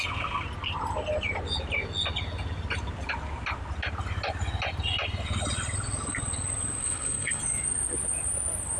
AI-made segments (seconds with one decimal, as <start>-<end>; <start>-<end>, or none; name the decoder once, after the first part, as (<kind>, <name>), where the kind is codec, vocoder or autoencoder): 6.8-7.4 (codec, HILCodec)